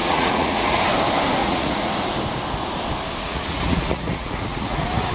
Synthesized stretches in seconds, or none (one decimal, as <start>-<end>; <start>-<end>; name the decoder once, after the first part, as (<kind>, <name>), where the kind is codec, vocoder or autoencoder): 0.0-0.8 (vocoder, Vocos); 1.4-1.9; 3.2-5.1